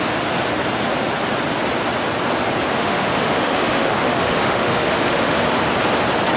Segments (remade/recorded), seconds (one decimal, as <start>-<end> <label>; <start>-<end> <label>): 0.0-2.7 recorded; 2.7-5.4 remade; 5.4-6.4 recorded

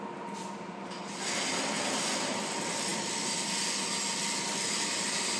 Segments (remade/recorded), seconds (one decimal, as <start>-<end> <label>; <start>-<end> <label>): 0.0-5.4 recorded